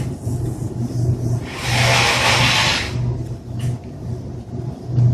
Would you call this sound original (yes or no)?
yes